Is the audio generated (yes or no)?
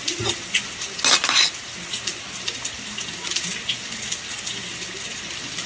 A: no